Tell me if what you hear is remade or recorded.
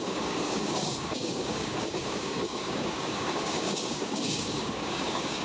remade